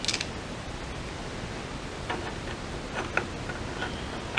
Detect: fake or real real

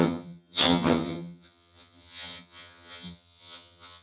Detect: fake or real fake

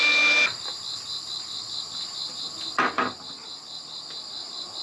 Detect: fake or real real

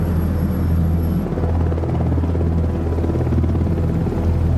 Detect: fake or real real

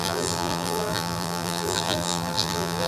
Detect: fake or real fake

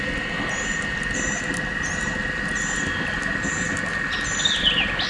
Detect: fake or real real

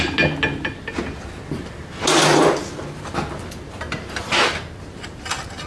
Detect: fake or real real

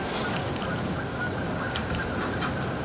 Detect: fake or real real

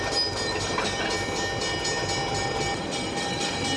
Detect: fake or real real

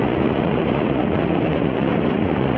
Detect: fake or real fake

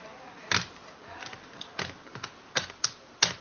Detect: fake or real real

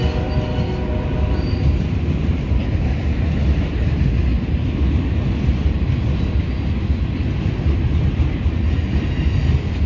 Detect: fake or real real